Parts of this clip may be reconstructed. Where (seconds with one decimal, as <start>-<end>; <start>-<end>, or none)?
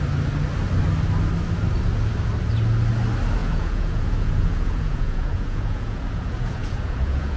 3.4-7.4